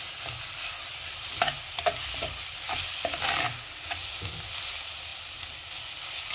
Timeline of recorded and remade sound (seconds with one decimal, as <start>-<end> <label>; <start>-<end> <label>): 0.0-6.3 recorded